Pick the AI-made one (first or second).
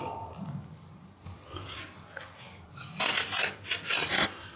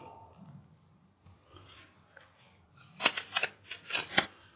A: first